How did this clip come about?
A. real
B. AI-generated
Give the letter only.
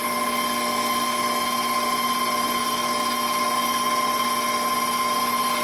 A